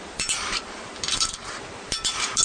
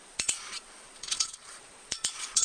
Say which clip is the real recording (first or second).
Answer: first